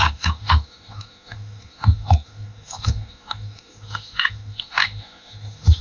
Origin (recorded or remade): remade